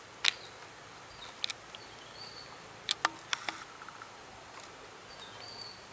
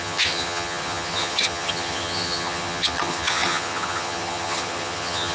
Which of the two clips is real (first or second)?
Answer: first